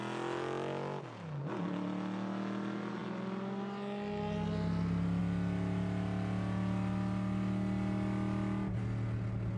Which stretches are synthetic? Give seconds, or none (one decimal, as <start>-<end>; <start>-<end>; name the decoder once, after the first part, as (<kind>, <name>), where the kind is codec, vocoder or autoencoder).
none

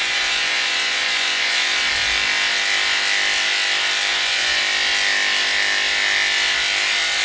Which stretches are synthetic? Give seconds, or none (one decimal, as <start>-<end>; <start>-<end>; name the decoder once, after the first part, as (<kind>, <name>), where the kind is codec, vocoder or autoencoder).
0.0-1.9 (vocoder, Vocos); 4.1-4.6

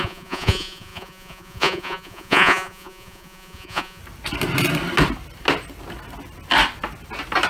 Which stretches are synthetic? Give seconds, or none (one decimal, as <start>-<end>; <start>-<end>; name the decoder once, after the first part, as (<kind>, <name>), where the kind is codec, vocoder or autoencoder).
0.0-4.0 (vocoder, Vocos)

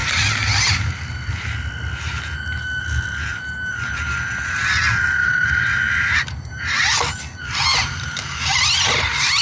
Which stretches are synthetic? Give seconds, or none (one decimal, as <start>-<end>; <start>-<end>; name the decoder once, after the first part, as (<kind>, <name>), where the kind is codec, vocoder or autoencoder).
5.2-7.2 (vocoder, BigVGAN v2); 7.7-9.0

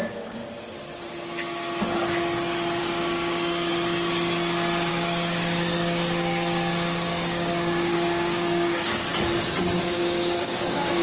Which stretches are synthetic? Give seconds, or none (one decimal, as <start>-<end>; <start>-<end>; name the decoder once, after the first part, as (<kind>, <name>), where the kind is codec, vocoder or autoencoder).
0.0-0.4 (codec, DAC); 2.8-3.7; 4.9-9.1; 9.8-11.0

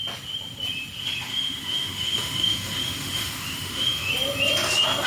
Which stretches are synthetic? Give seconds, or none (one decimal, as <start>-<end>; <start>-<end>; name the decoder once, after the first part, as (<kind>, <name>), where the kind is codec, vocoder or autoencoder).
1.0-4.1 (autoencoder, DAC-VAE)